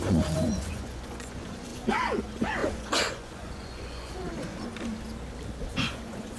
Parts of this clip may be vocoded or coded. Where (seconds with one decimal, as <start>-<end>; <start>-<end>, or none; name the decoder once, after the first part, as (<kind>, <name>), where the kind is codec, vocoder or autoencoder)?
0.0-4.7 (vocoder, Vocos); 5.7-6.4